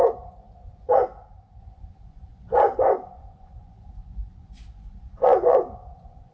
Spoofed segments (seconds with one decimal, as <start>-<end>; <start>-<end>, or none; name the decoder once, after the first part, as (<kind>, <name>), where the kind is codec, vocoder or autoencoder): 0.0-1.0 (vocoder, Vocos); 1.6-6.3